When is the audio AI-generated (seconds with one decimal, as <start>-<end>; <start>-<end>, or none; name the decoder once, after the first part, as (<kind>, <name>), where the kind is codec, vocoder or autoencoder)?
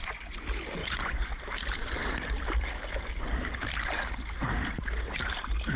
0.8-1.3 (vocoder, Vocos)